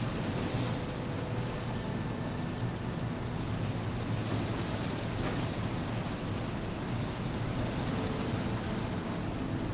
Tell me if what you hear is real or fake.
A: real